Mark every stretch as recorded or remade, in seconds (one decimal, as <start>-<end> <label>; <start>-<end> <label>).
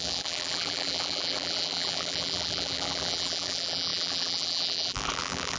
0.0-5.6 remade